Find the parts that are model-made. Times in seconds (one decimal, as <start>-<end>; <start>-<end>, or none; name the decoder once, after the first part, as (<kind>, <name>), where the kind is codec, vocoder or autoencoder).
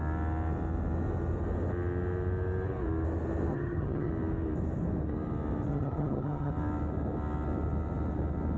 3.5-4.1 (vocoder, HiFi-GAN); 5.7-6.5